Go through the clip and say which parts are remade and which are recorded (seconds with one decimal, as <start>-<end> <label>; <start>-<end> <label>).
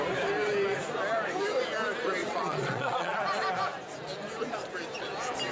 0.0-2.2 recorded; 2.2-3.2 remade; 3.2-5.5 recorded